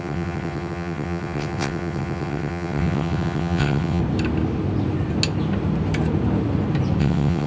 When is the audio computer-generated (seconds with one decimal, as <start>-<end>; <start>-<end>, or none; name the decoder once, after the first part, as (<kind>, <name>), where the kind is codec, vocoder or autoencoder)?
0.0-4.0 (vocoder, WaveNeXt); 7.0-7.5